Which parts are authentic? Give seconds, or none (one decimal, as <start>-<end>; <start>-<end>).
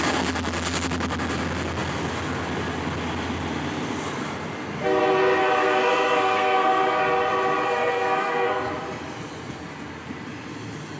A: 0.0-5.4; 7.0-7.6; 8.7-11.0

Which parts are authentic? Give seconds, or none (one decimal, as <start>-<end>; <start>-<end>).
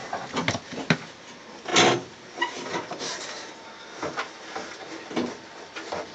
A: 0.0-6.1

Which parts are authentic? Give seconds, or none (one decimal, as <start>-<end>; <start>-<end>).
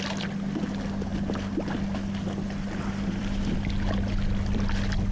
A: 0.0-5.1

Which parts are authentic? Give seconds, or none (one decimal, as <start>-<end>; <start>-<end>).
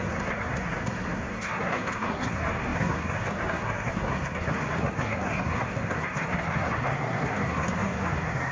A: none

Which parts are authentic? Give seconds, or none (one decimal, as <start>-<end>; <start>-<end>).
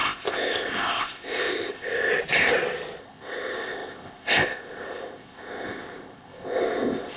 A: 2.1-3.0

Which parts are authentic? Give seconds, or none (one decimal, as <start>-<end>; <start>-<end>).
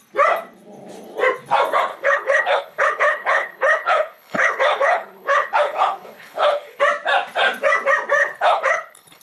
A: 0.0-1.9; 6.8-8.2